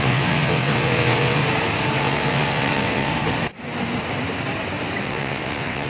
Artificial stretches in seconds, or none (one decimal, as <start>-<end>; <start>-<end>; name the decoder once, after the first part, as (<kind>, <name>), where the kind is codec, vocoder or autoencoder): 0.0-1.4 (vocoder, WaveNeXt); 2.0-3.1; 5.0-5.9

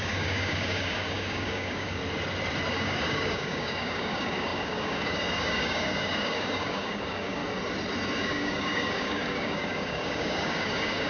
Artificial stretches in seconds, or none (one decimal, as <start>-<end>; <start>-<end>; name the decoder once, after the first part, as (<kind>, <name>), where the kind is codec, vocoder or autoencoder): 0.0-2.0 (codec, DAC); 2.7-7.4; 8.2-11.1

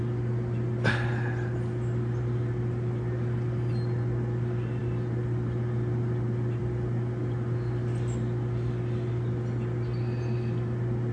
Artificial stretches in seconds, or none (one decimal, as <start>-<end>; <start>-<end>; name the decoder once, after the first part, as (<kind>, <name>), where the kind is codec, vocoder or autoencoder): none

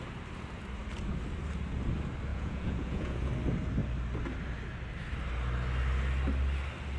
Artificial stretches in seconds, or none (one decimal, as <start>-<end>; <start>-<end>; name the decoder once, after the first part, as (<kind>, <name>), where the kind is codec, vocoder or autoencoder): 2.3-3.3 (vocoder, Vocos)

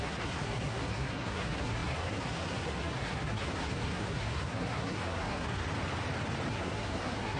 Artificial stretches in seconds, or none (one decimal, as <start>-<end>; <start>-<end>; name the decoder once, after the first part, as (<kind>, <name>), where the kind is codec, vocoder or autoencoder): 0.0-5.6 (codec, SNAC); 6.5-7.4

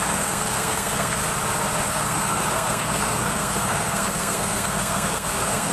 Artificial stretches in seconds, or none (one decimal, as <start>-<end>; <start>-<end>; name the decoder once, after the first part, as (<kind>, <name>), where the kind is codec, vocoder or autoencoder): 0.0-1.2 (codec, SNAC); 1.9-5.7

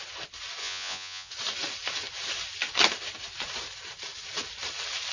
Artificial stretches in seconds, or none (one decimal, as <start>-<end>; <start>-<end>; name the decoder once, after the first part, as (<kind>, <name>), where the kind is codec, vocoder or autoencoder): 0.6-1.3 (vocoder, Vocos)

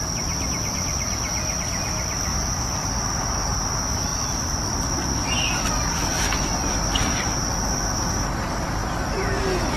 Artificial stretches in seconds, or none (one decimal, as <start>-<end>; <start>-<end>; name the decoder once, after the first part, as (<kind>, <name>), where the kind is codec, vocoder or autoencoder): 1.1-1.7 (vocoder, BigVGAN v2); 2.3-3.0; 4.1-7.3